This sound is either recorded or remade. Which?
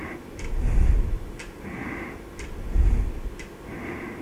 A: recorded